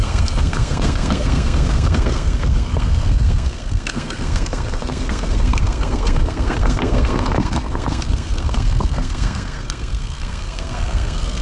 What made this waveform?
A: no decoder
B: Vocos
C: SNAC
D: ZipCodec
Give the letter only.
C